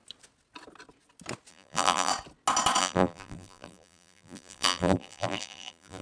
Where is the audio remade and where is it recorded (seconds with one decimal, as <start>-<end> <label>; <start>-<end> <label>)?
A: 0.0-1.5 recorded; 1.5-2.1 remade; 2.1-2.8 recorded; 2.8-6.0 remade